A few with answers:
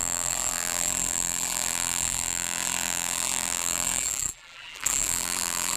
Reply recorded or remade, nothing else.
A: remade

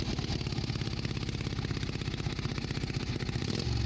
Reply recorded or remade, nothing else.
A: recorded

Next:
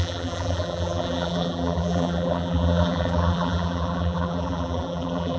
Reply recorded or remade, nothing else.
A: remade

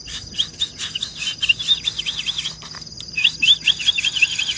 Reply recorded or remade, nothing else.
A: recorded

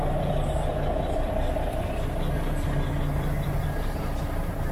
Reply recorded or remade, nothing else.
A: remade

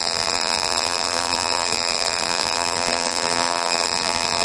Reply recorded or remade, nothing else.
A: remade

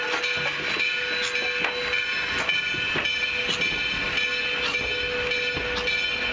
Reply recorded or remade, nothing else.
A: recorded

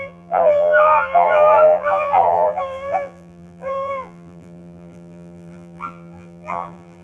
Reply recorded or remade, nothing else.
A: remade